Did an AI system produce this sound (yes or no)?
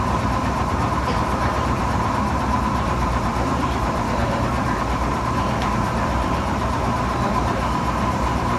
yes